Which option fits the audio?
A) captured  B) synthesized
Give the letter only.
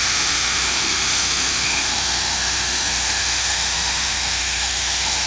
B